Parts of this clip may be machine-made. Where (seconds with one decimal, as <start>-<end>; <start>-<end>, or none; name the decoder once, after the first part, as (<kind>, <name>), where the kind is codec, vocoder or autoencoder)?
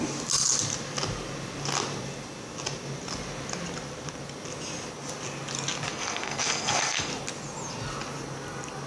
5.9-7.1 (codec, SNAC)